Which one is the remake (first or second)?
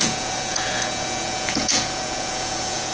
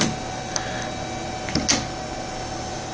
first